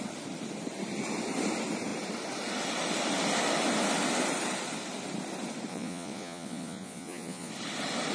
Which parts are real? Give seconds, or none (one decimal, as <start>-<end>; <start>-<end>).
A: 0.0-5.7; 7.5-8.1